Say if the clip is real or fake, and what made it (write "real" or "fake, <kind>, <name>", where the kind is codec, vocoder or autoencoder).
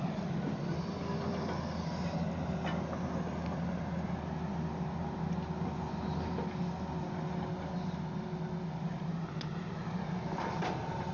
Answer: real